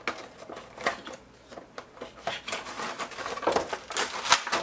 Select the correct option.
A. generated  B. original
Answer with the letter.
B